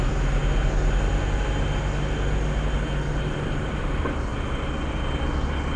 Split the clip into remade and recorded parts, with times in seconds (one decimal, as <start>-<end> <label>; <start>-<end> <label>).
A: 0.0-5.8 recorded